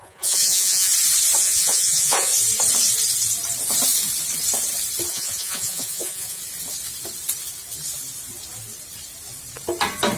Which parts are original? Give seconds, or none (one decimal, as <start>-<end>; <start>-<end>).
0.9-1.4; 2.3-5.1; 6.4-10.2